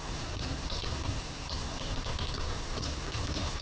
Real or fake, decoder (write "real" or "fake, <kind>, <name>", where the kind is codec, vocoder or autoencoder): fake, codec, SNAC